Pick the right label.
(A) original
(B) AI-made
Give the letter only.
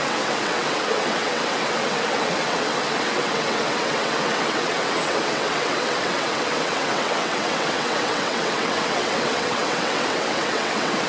B